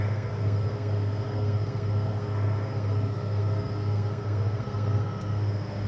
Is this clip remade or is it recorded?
remade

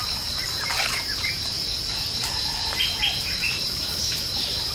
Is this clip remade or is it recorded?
remade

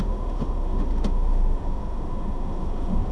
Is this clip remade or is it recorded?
remade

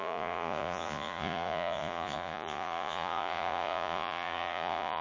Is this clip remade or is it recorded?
remade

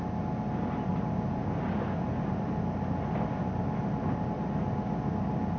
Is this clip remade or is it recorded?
recorded